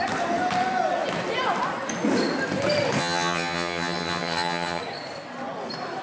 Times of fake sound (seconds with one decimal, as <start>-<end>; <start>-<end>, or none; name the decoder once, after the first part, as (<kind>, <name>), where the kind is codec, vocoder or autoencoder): 3.0-4.8 (vocoder, HiFi-GAN)